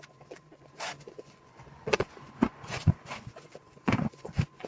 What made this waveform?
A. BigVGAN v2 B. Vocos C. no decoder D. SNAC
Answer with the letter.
B